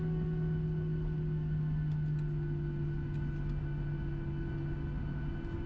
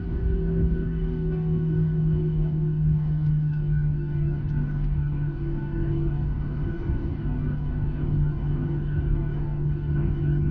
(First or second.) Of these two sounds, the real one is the first